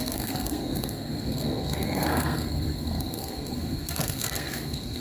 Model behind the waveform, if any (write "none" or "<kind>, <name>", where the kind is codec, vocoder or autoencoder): codec, SNAC